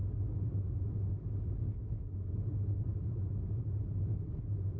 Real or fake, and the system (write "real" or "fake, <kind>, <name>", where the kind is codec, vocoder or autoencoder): real